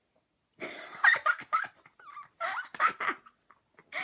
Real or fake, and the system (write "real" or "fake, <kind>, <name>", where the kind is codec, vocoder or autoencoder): real